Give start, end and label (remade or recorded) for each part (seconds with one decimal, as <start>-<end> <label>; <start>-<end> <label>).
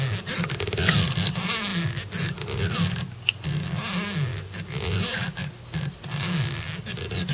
0.0-7.3 recorded